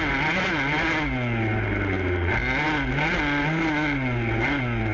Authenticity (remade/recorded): recorded